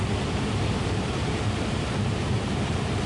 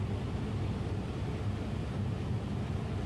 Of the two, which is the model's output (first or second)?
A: first